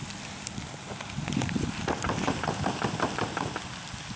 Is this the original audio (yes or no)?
yes